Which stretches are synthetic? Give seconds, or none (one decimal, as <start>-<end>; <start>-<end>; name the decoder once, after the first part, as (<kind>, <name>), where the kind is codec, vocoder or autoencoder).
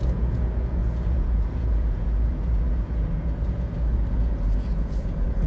0.0-5.5 (vocoder, Vocos)